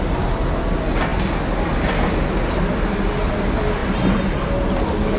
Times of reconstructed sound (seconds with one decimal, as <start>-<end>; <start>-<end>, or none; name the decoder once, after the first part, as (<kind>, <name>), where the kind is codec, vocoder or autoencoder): none